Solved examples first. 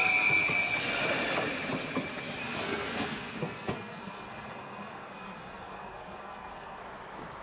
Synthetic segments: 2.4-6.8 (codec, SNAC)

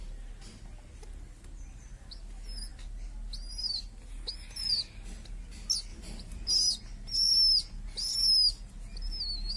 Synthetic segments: none

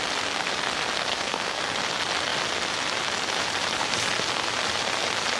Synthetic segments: 1.1-1.6 (codec, SNAC)